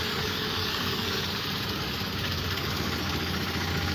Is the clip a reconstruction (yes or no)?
yes